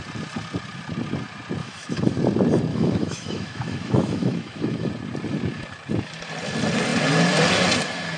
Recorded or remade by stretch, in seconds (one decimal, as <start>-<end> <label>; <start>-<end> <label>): 0.0-1.6 recorded; 1.6-2.1 remade; 2.1-2.7 recorded; 2.7-4.9 remade; 4.9-8.2 recorded